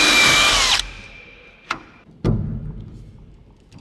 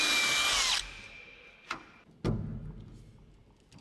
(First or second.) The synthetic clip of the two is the first